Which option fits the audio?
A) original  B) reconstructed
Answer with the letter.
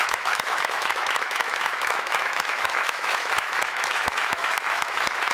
B